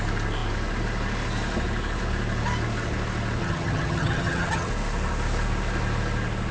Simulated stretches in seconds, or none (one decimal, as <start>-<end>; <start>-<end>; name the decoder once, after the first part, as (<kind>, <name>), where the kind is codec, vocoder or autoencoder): 3.4-4.7 (vocoder, HiFi-GAN)